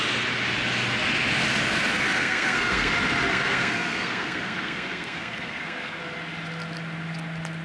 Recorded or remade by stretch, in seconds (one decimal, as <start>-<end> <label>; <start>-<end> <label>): 0.0-2.1 recorded; 2.1-2.9 remade; 2.9-3.3 recorded; 3.3-6.0 remade; 6.0-7.6 recorded

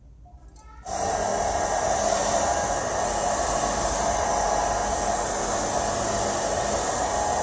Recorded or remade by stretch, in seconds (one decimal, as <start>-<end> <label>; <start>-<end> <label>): 0.0-7.4 recorded

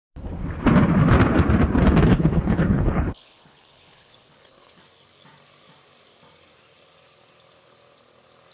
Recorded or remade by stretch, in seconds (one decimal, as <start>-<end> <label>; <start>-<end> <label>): 0.0-2.1 recorded; 2.1-4.8 remade; 4.8-8.5 recorded

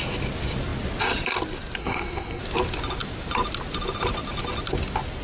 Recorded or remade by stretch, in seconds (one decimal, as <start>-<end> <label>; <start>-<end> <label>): 0.0-1.8 recorded; 1.8-2.4 remade; 2.4-5.2 recorded